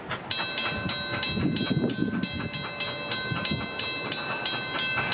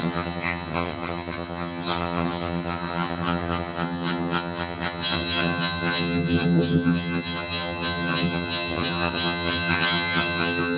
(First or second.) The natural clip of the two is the first